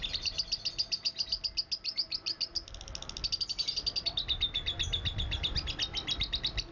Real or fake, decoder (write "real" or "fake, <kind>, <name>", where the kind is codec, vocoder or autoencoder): real